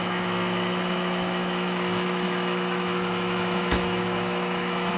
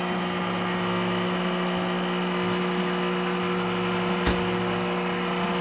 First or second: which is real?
second